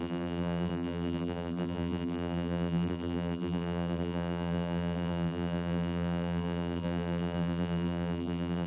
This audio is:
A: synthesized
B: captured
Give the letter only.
A